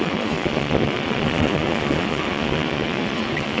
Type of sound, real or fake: fake